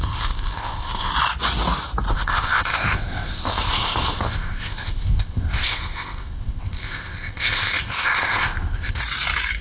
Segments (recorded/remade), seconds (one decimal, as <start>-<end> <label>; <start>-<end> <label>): 0.0-1.1 remade; 1.1-2.1 recorded; 2.1-9.0 remade; 9.0-9.6 recorded